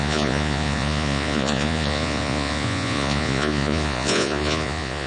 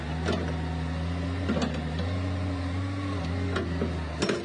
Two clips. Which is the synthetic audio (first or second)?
first